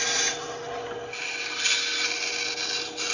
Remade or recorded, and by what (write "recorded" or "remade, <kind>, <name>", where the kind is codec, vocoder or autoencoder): recorded